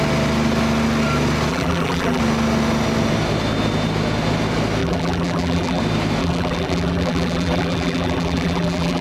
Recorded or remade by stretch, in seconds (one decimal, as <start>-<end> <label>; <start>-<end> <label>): 0.0-1.5 recorded; 1.5-2.2 remade; 2.2-4.8 recorded; 4.8-5.8 remade; 5.8-6.2 recorded; 6.2-9.0 remade